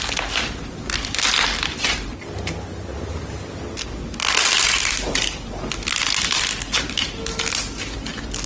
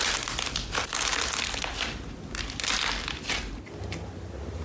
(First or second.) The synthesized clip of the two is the second